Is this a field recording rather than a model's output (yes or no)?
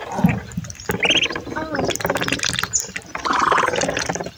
yes